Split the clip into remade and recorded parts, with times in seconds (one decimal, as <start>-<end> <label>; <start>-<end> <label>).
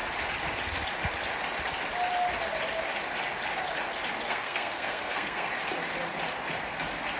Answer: 0.0-4.3 recorded; 4.3-5.5 remade; 5.5-7.2 recorded